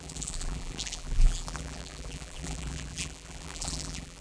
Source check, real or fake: fake